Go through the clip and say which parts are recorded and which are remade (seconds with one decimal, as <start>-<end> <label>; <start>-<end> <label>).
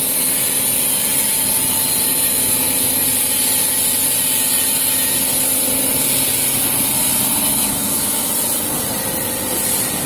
0.0-7.5 recorded; 7.5-8.3 remade; 8.3-10.1 recorded